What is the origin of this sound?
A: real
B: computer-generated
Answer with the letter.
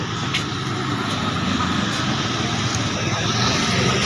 A